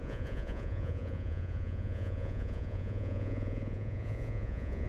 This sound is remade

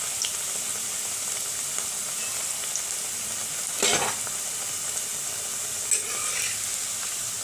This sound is recorded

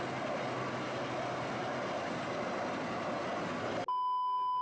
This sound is recorded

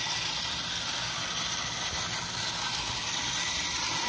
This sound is recorded